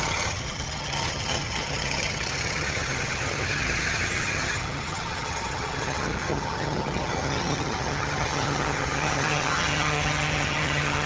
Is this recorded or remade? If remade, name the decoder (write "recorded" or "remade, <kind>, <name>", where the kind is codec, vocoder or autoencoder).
remade, vocoder, HiFi-GAN